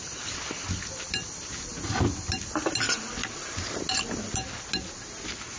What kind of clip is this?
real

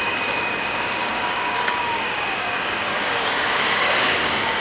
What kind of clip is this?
fake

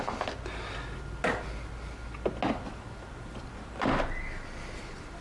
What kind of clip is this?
real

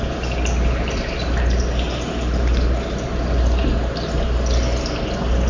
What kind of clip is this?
real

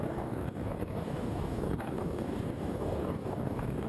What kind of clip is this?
fake